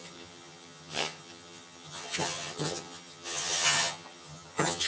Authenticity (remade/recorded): remade